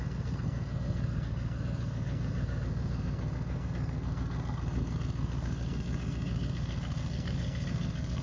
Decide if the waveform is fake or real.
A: fake